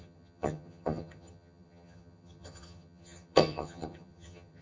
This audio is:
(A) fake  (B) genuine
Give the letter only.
A